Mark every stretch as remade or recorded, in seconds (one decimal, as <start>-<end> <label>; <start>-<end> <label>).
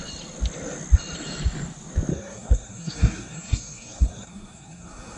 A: 0.0-2.1 recorded; 2.1-5.2 remade